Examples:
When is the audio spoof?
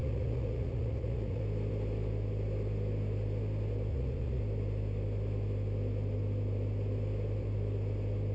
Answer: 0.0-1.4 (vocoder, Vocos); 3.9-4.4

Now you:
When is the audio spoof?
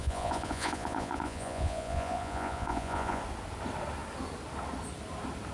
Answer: 0.0-3.2 (vocoder, Vocos)